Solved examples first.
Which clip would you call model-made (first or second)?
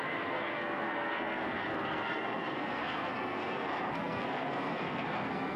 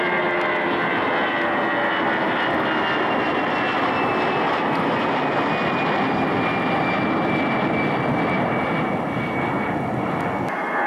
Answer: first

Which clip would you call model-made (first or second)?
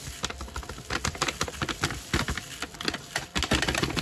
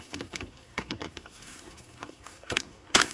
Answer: second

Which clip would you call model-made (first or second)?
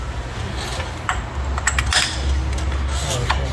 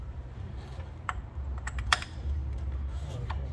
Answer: second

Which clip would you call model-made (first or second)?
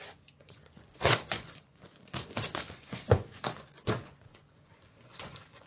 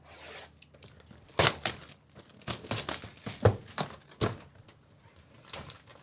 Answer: first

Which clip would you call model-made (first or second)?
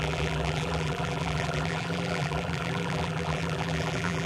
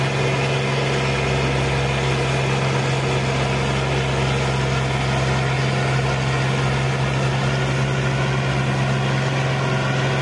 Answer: first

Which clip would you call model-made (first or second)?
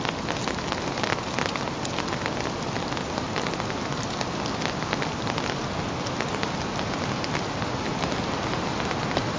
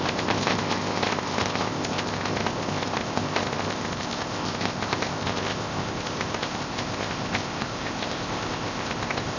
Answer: second